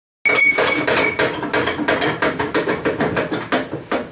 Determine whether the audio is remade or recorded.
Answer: recorded